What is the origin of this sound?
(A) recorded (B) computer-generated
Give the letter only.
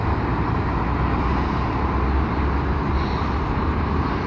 A